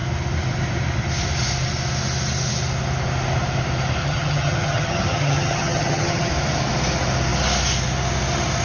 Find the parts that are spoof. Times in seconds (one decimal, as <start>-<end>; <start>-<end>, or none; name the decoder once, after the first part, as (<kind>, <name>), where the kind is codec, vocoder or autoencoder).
4.0-6.3 (vocoder, HiFi-GAN)